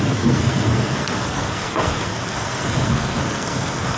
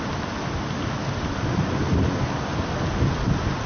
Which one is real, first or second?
second